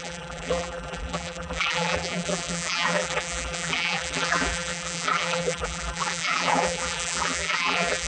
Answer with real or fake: fake